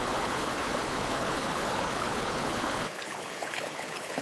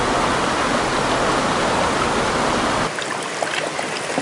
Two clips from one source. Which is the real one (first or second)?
second